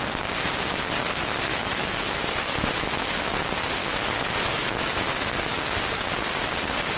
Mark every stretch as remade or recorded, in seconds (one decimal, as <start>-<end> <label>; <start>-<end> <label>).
0.0-1.5 recorded; 1.5-2.2 remade; 2.2-3.8 recorded; 3.8-5.1 remade; 5.1-7.0 recorded